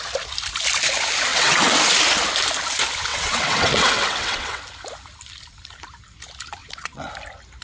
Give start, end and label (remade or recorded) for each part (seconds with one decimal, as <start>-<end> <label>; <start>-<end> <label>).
0.0-1.3 recorded; 1.3-1.8 remade; 1.8-3.1 recorded; 3.1-4.6 remade; 4.6-6.6 recorded; 6.6-7.1 remade; 7.1-7.6 recorded